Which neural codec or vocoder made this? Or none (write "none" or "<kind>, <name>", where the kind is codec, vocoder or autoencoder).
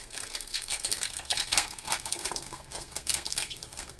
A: codec, SNAC